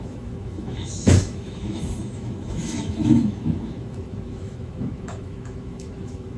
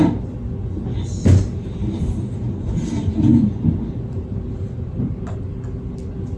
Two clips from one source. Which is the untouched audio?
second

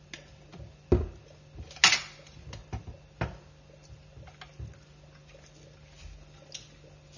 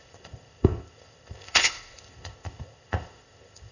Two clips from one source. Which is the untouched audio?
first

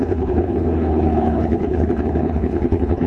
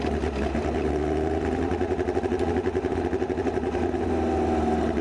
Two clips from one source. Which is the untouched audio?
second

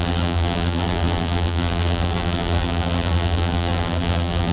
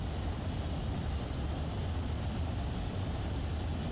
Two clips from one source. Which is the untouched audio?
second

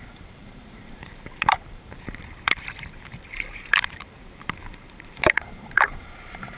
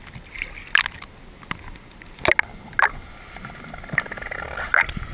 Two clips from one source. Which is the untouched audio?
second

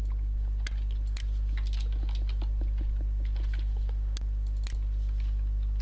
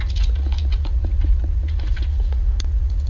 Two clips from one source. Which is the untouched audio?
first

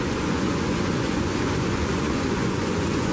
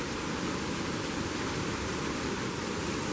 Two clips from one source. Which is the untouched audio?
second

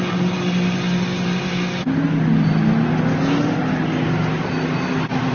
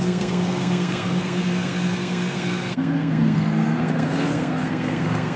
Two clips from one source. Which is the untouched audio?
first